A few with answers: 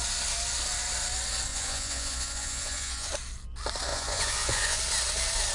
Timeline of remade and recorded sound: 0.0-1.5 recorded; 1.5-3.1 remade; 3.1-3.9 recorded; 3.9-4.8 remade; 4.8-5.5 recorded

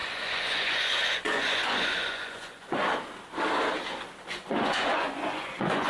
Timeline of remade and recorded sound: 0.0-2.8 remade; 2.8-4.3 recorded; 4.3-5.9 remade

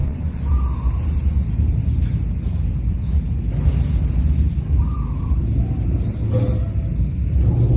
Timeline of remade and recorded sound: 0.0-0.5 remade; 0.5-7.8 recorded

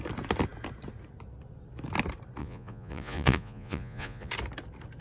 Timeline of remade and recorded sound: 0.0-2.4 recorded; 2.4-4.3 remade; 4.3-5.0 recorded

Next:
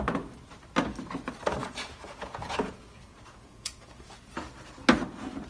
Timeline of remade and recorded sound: 0.0-1.6 recorded; 1.6-4.3 remade; 4.3-5.5 recorded